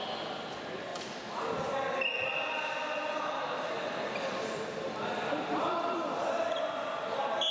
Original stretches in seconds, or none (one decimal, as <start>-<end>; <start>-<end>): 0.0-7.5